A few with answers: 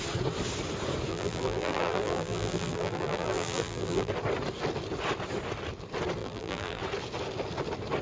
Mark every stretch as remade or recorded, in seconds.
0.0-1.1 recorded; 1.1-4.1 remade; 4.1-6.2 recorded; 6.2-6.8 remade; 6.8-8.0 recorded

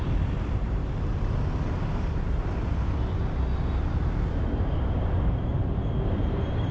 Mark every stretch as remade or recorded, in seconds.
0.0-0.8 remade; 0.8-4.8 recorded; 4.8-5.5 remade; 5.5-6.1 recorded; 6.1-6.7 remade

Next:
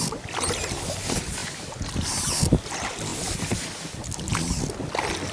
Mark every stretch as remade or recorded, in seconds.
0.0-5.3 recorded

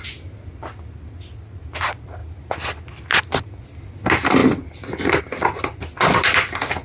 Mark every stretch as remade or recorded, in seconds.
0.0-6.8 recorded